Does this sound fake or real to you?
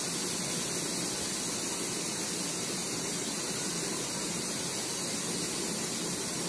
real